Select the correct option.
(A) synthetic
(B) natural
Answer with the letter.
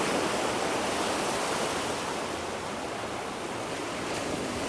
B